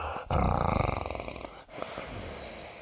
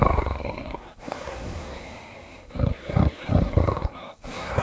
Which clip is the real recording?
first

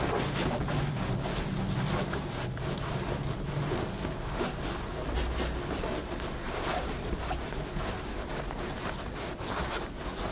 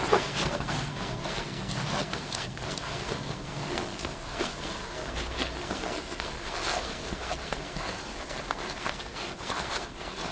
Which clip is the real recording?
first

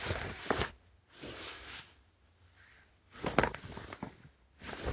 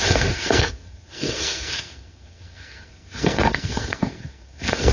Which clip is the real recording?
first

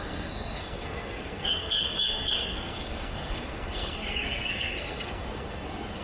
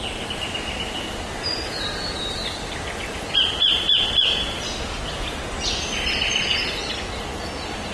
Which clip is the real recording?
second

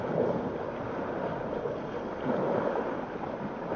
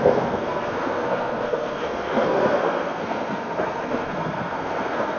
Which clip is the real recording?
first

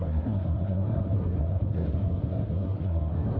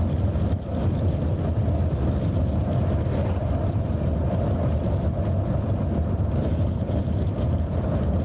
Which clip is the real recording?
second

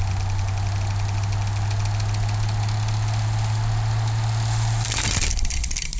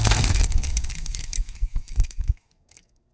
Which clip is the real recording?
first